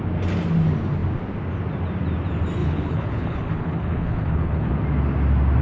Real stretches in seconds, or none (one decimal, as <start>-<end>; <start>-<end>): 0.0-2.6; 4.7-5.6